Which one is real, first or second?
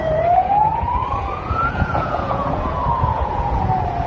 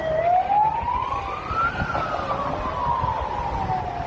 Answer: second